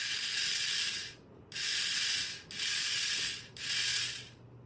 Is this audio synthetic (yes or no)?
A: no